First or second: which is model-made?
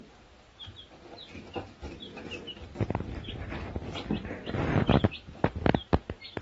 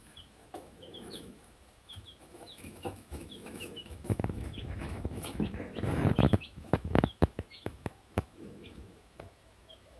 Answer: second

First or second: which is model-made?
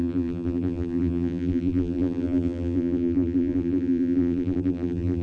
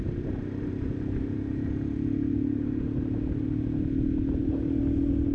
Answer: first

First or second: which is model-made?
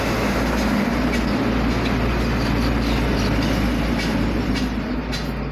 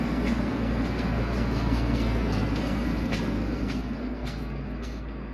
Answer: second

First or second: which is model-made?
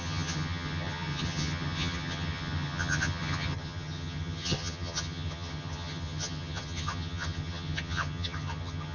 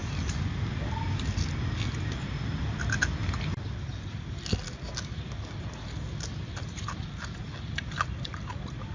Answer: first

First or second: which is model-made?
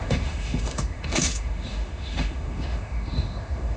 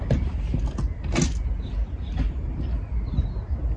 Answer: first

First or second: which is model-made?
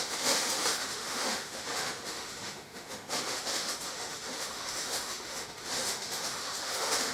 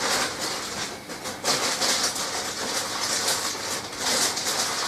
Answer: first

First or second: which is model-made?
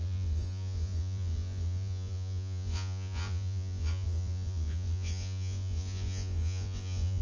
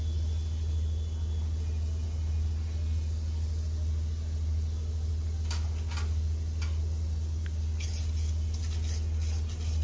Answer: first